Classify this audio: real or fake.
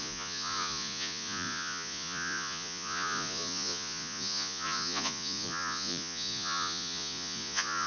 fake